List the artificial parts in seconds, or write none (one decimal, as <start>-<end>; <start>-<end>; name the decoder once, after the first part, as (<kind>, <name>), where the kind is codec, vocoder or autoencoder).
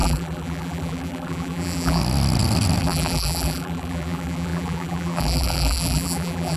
0.0-2.0 (vocoder, BigVGAN v2); 2.8-6.6